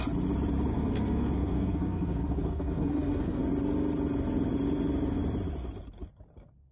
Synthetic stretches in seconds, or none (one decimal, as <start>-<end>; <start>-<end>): 0.7-3.4